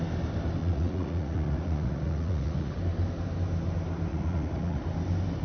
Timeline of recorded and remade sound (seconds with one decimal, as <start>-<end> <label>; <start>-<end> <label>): 0.0-0.6 recorded; 0.6-2.8 remade; 2.8-4.1 recorded; 4.1-4.8 remade; 4.8-5.4 recorded